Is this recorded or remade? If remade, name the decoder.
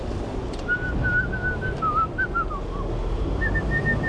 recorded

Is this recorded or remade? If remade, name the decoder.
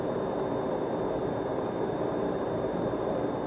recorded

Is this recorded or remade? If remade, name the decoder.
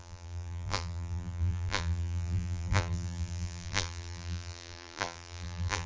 remade, vocoder, BigVGAN v2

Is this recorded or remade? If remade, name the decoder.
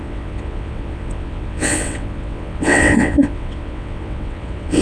remade, vocoder, WaveNeXt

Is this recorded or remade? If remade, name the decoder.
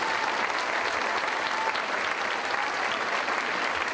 recorded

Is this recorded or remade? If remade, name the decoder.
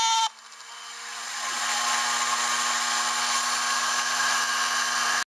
recorded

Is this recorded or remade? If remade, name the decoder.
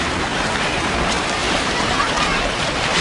remade, vocoder, BigVGAN v2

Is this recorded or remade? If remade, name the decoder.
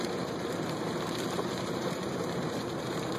remade, vocoder, BigVGAN v2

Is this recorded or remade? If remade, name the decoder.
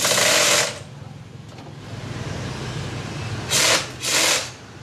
recorded